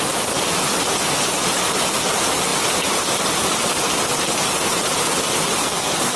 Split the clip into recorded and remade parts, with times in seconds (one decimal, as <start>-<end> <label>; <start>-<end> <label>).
0.0-5.6 recorded; 5.6-6.2 remade